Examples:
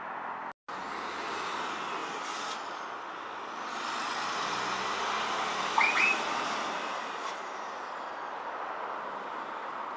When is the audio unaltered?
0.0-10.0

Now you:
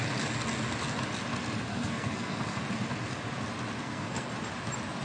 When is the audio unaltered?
0.0-1.7; 2.6-3.8; 4.3-5.0

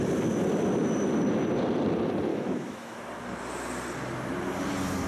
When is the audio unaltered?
0.0-2.3; 3.0-5.1

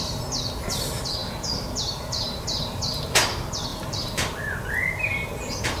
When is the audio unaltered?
0.0-1.2; 2.8-3.7

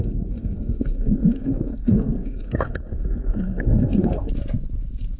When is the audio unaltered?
4.3-5.2

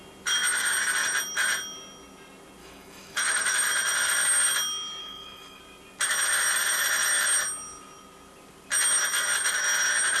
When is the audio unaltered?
0.0-2.6; 3.7-5.0; 5.6-10.2

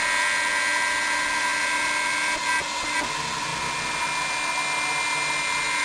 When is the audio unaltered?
0.0-5.8

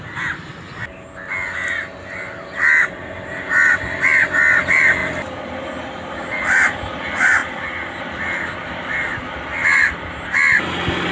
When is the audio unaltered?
0.0-5.0; 6.1-11.1